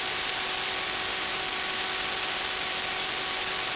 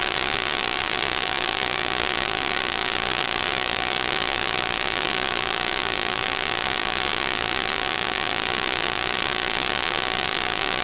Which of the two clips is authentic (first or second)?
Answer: first